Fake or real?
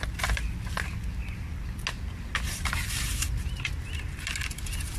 real